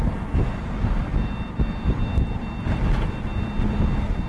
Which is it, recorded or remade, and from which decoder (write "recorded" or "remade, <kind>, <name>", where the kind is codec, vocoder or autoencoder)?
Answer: recorded